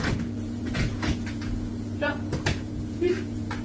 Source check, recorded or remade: remade